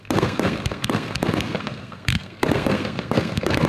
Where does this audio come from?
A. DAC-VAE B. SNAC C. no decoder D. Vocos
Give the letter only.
B